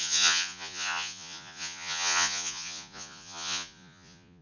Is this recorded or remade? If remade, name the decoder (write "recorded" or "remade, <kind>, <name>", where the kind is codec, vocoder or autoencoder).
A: remade, vocoder, Vocos